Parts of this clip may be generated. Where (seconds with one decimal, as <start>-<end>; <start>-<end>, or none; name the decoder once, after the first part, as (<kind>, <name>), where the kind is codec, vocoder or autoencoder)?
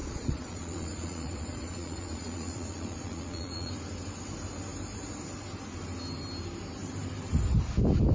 0.0-3.7 (vocoder, Vocos)